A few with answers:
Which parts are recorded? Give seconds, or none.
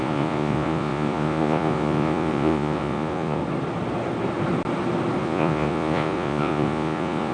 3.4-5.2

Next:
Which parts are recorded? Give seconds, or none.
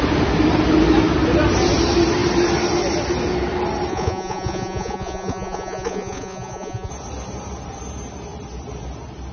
0.0-3.9; 6.9-9.3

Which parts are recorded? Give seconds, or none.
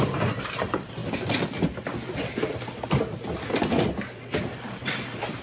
none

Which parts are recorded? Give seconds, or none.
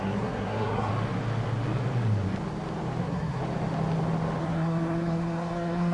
0.9-3.0; 3.4-4.4